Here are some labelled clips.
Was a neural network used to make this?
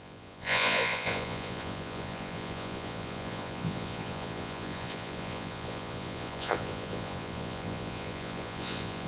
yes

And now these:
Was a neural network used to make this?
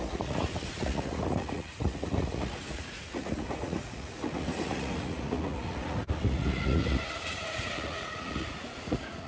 yes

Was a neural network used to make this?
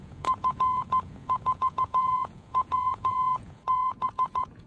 yes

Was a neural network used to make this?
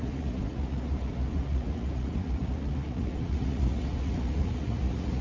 yes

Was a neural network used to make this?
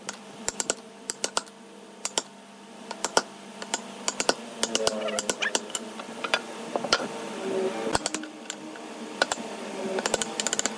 no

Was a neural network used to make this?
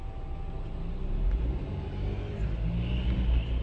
no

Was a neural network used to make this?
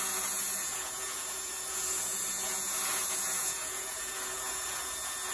yes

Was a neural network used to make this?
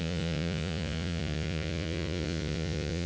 yes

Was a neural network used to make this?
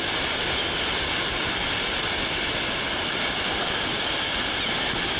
no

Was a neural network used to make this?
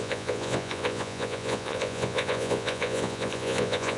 yes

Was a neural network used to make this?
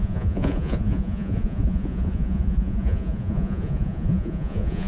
yes